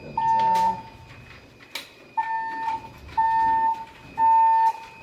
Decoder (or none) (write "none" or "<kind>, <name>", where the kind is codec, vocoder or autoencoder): none